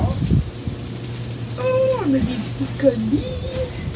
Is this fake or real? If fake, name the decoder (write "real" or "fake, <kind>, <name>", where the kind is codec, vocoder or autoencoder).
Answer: real